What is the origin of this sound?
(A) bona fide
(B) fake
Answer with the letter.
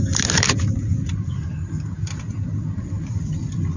A